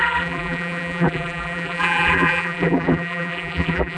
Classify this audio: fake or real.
fake